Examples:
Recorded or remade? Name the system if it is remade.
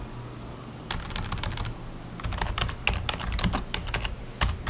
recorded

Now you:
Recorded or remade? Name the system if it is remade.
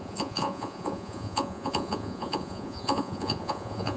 remade, vocoder, Vocos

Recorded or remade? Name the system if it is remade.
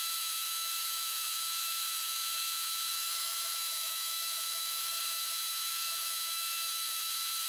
remade, autoencoder, DAC-VAE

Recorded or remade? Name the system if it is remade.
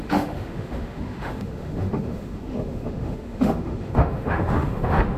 remade, autoencoder, DAC-VAE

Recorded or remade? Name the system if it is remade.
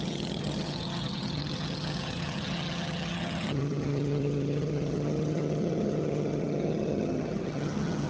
remade, vocoder, HiFi-GAN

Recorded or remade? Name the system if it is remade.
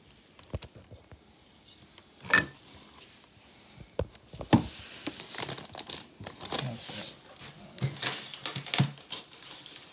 recorded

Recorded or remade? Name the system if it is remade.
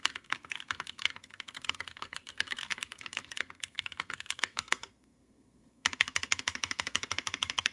remade, codec, SNAC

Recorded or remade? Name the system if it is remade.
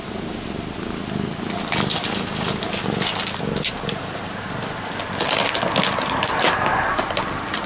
recorded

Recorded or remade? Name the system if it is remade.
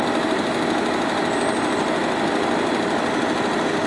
recorded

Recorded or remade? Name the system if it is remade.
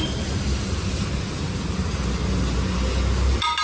recorded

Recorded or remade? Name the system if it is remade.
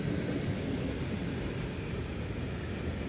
recorded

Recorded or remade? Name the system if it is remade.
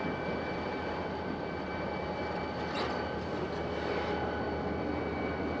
recorded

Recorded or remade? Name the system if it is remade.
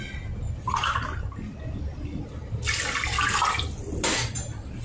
recorded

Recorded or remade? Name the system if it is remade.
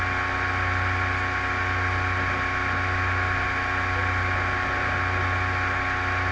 recorded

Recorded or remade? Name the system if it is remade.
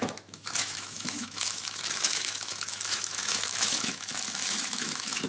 remade, autoencoder, DAC-VAE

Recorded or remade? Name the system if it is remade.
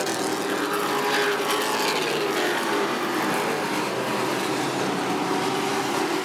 recorded